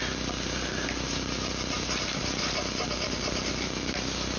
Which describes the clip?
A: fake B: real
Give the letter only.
B